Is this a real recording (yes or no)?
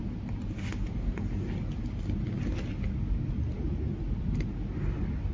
yes